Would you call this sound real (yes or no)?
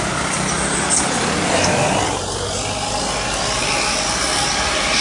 yes